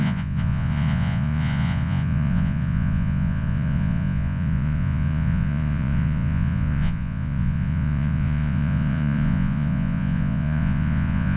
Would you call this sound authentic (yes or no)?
no